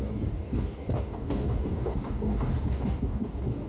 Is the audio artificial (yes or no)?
yes